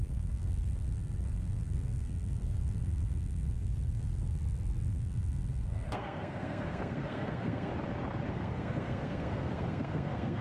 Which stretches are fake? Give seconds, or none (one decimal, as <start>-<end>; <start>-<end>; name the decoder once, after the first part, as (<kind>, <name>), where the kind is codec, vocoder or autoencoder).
0.0-4.4 (codec, SNAC); 4.9-7.7; 8.3-10.4